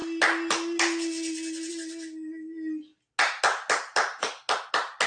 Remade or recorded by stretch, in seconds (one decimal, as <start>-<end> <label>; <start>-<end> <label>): 0.0-5.1 recorded